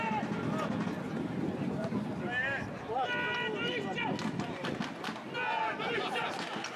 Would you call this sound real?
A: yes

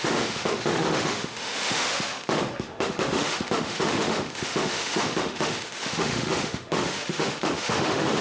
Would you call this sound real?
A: no